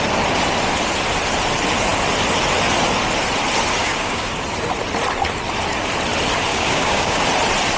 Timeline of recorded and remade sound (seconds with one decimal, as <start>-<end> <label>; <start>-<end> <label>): 0.0-3.8 recorded; 3.8-4.3 remade; 4.3-6.5 recorded; 6.5-7.2 remade; 7.2-7.8 recorded